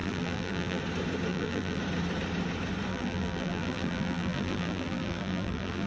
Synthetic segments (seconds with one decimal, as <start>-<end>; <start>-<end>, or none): 0.0-0.8; 1.3-1.8; 2.9-5.9